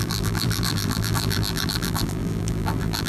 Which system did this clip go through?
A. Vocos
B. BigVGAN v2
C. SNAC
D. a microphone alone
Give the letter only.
B